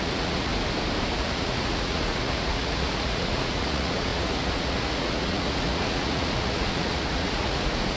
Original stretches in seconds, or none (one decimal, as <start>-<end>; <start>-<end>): 0.5-1.1